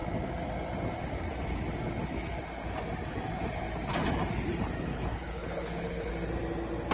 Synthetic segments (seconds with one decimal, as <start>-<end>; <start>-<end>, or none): 4.9-6.1